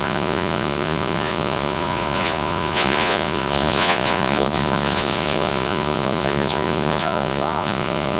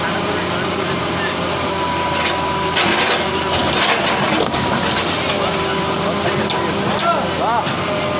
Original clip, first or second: second